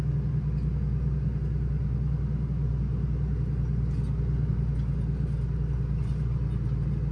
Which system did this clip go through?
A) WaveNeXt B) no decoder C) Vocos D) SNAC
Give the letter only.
B